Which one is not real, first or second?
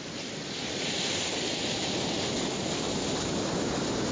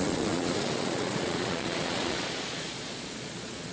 second